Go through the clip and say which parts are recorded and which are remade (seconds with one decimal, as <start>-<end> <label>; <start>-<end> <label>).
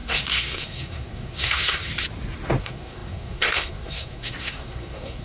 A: 0.0-1.9 remade; 1.9-2.6 recorded; 2.6-5.2 remade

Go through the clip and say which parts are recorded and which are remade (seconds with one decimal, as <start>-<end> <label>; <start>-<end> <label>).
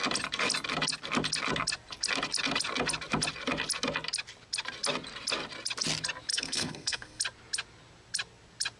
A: 0.0-6.3 recorded; 6.3-7.2 remade; 7.2-8.8 recorded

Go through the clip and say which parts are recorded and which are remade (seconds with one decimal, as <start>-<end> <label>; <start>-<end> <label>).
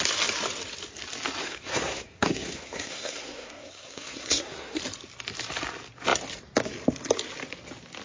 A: 0.0-1.4 recorded; 1.4-4.8 remade; 4.8-8.0 recorded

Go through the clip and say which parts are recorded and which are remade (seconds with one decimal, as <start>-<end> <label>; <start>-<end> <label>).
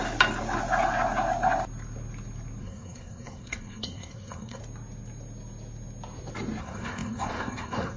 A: 0.0-2.6 recorded; 2.6-4.6 remade; 4.6-6.6 recorded; 6.6-8.0 remade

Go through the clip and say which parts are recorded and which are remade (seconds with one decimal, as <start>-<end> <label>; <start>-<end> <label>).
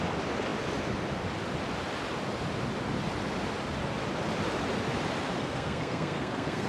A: 0.0-5.4 recorded; 5.4-6.7 remade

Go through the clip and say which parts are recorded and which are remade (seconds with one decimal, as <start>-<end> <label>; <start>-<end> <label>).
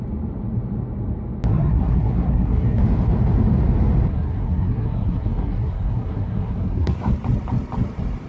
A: 0.0-1.5 recorded; 1.5-2.8 remade; 2.8-4.1 recorded; 4.1-7.1 remade; 7.1-8.3 recorded